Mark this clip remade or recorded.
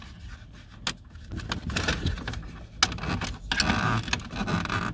recorded